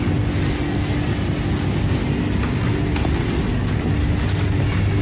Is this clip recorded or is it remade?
recorded